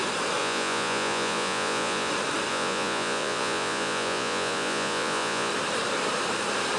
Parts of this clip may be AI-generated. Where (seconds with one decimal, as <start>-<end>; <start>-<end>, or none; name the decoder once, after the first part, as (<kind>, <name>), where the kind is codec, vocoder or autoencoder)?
0.4-2.1 (vocoder, Vocos); 2.5-5.5